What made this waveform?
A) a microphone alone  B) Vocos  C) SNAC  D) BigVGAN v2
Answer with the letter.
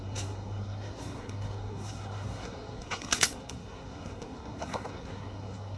C